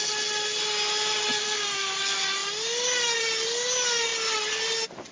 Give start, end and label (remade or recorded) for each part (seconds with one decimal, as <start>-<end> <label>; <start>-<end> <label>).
0.0-1.4 recorded; 1.4-1.9 remade; 1.9-5.1 recorded